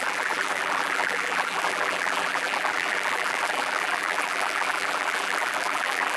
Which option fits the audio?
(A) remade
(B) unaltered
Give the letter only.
A